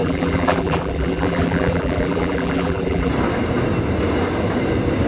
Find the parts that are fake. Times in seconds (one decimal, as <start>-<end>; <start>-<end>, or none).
0.0-3.1